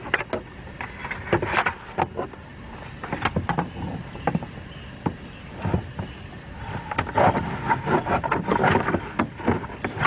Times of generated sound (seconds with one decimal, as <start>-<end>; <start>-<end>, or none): 8.5-9.2